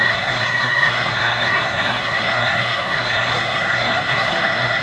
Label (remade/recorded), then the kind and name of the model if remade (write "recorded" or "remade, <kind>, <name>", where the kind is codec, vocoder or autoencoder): remade, codec, SNAC